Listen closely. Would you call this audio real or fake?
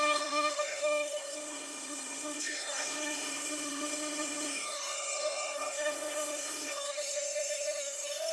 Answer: fake